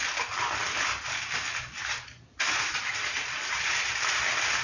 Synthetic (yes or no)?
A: no